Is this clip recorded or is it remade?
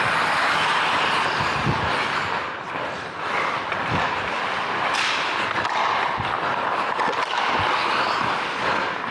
recorded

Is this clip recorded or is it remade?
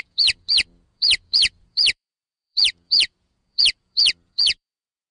remade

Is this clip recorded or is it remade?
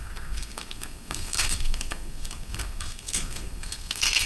remade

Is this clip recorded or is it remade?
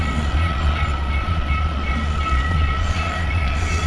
remade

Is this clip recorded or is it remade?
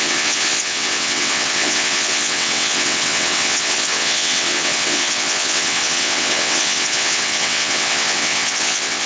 remade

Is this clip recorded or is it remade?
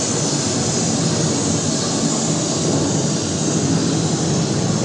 recorded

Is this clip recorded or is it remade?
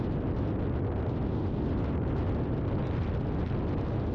recorded